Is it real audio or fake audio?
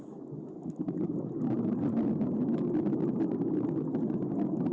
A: real